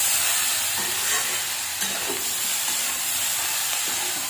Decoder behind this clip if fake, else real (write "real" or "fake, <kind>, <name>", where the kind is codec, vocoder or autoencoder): fake, vocoder, BigVGAN v2